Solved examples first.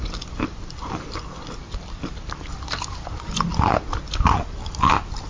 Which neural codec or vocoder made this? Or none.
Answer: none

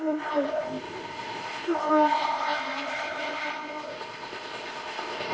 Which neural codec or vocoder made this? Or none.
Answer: codec, ZipCodec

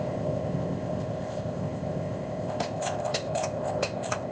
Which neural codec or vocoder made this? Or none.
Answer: codec, ZipCodec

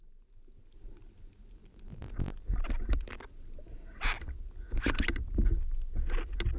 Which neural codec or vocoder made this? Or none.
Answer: none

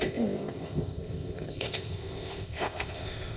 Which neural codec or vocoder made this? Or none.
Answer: codec, ZipCodec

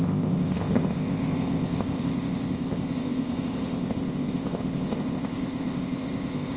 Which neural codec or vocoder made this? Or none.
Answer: codec, ZipCodec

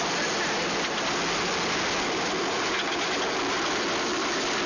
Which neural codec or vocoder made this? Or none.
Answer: none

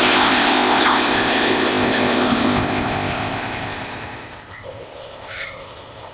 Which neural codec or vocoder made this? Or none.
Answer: codec, ZipCodec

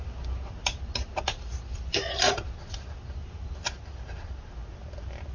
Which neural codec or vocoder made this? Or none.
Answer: none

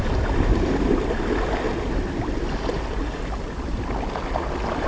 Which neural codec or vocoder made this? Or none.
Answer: none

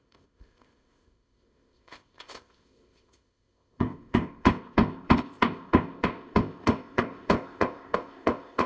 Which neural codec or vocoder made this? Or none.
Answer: codec, ZipCodec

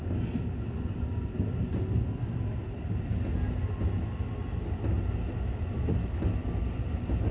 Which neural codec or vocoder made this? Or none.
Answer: none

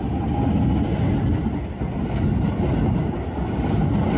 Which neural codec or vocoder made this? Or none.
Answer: none